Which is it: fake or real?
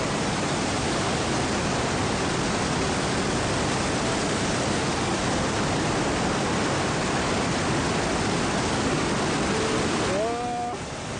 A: real